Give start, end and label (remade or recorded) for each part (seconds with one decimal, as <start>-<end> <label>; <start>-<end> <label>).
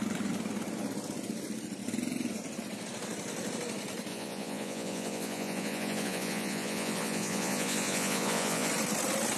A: 0.0-4.1 recorded; 4.1-8.7 remade; 8.7-9.4 recorded